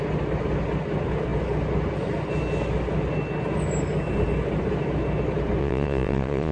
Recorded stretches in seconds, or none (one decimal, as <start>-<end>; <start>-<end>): 0.0-5.6